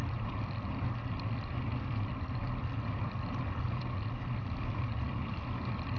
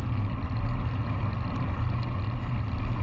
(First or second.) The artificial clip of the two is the first